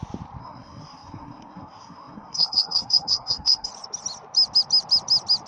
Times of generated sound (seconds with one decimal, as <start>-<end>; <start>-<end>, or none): 0.4-3.7